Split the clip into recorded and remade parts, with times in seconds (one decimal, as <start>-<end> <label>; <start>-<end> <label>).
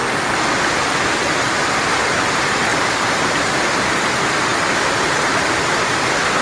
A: 0.0-2.2 recorded; 2.2-6.4 remade